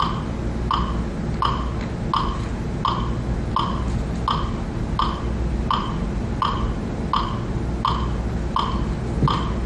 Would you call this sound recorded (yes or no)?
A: yes